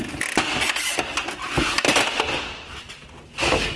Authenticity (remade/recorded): recorded